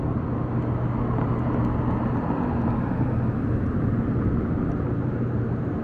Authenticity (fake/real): real